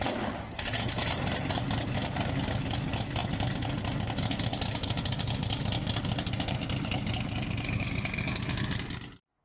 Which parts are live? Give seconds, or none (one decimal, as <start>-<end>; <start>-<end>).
0.0-9.4